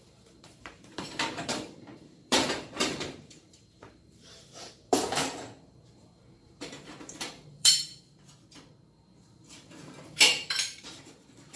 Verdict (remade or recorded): remade